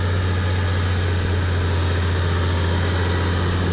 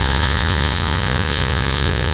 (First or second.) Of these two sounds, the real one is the first